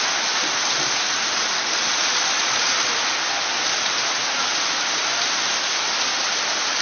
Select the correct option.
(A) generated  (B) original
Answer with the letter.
B